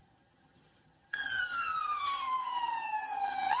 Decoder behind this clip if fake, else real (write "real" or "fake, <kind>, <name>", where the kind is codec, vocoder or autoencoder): fake, vocoder, HiFi-GAN